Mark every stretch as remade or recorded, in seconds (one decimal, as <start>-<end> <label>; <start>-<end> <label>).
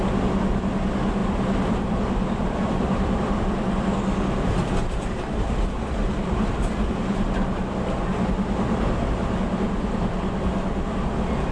0.0-1.2 recorded; 1.2-3.4 remade; 3.4-4.6 recorded; 4.6-8.3 remade; 8.3-11.5 recorded